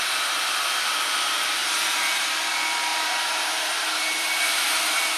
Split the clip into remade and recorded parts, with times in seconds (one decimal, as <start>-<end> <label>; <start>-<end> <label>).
0.0-1.6 recorded; 1.6-2.3 remade; 2.3-2.9 recorded; 2.9-4.8 remade; 4.8-5.2 recorded